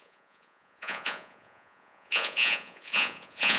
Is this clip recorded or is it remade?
remade